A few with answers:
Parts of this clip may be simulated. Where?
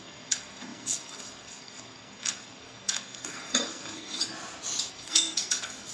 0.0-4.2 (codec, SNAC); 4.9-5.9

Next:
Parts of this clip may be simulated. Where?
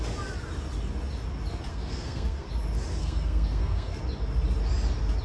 1.7-2.5 (codec, SNAC); 3.0-4.0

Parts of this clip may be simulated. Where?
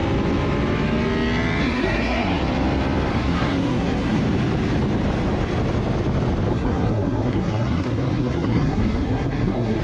1.6-2.4 (codec, SNAC); 3.1-4.2; 6.5-9.8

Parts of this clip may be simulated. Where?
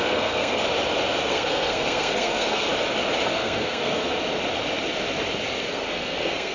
0.0-0.6 (codec, SNAC); 1.2-2.7; 3.3-4.1; 5.6-6.5